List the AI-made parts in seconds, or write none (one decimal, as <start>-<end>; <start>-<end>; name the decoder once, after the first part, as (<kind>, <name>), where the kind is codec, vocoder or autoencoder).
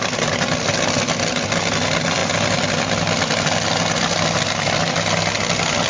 none